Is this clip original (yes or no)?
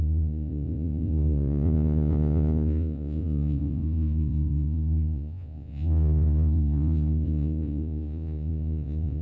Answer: no